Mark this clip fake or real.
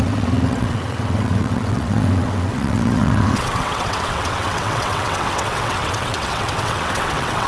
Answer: fake